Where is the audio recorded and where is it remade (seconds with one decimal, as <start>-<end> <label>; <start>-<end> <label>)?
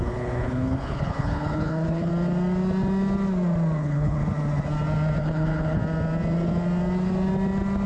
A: 0.0-2.1 remade; 2.1-3.8 recorded; 3.8-4.2 remade; 4.2-5.2 recorded; 5.2-5.8 remade; 5.8-7.9 recorded